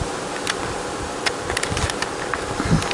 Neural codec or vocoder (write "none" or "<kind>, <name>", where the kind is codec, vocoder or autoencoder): vocoder, BigVGAN v2